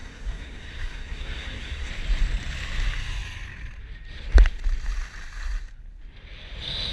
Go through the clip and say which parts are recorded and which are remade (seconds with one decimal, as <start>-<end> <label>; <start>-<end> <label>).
0.0-1.9 remade; 1.9-6.9 recorded